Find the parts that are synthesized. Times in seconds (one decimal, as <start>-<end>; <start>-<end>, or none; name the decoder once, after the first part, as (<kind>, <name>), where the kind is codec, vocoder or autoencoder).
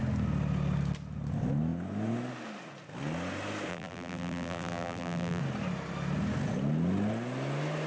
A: 3.7-5.4 (vocoder, BigVGAN v2)